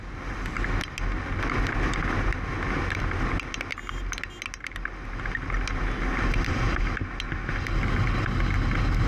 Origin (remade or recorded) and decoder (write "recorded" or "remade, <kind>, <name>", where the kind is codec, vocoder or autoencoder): recorded